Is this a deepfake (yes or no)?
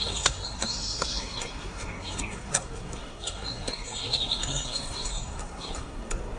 yes